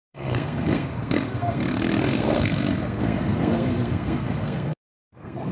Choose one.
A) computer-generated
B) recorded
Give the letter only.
A